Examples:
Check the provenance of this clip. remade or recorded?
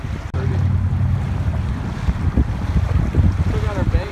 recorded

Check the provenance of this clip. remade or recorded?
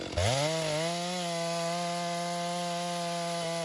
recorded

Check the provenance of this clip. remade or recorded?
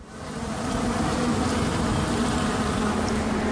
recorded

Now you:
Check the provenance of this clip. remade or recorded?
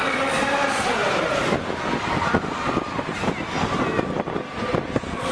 recorded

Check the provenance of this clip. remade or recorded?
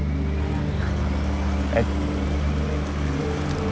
recorded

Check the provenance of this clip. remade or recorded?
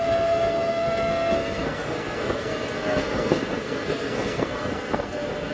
remade